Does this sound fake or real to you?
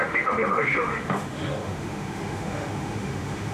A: fake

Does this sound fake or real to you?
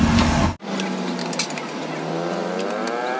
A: real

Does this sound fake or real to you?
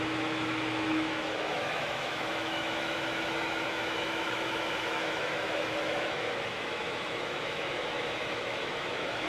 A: fake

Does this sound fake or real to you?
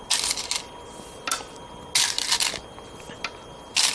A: real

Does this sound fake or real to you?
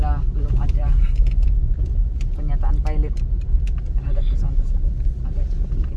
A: real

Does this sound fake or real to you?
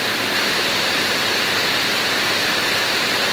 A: real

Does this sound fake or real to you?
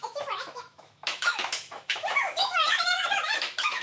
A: fake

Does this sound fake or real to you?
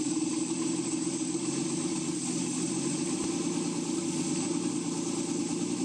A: real